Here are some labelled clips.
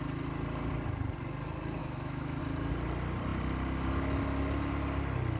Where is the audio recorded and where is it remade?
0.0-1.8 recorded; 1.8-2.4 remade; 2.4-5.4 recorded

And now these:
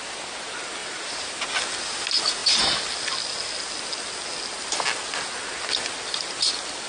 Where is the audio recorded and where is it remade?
0.0-0.8 recorded; 0.8-1.4 remade; 1.4-6.9 recorded